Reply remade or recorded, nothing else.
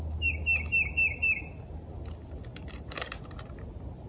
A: recorded